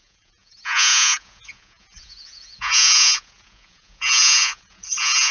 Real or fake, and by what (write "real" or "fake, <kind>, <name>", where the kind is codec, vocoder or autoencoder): fake, vocoder, Vocos